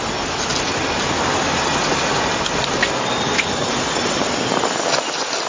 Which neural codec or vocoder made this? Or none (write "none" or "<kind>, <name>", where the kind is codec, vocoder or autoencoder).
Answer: none